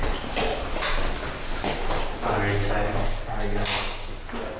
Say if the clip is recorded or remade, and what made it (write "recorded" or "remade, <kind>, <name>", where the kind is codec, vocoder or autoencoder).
recorded